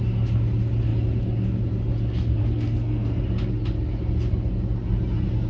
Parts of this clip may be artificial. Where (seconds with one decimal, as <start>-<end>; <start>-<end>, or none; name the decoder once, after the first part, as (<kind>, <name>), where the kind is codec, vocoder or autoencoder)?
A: 2.4-3.2 (codec, SNAC)